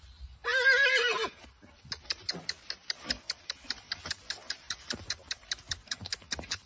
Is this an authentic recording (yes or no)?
no